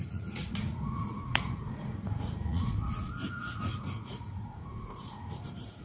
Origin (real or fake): fake